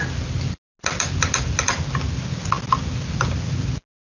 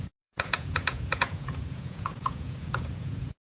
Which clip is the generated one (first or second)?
second